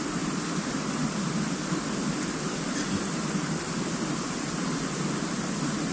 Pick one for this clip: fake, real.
real